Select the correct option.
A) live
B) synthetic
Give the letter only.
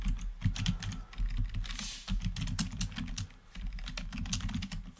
A